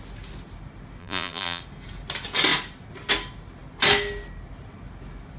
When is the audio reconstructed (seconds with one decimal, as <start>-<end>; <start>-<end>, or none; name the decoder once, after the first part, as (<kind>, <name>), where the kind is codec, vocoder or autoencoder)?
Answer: 1.0-1.6 (vocoder, BigVGAN v2)